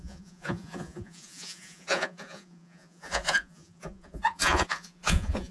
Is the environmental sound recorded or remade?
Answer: remade